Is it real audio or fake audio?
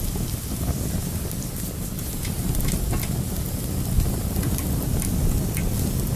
real